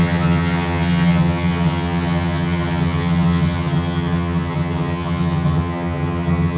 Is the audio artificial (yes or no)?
yes